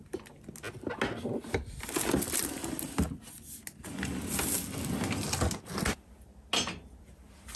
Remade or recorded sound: recorded